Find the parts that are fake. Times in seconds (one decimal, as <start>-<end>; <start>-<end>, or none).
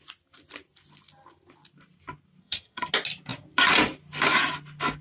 2.4-2.9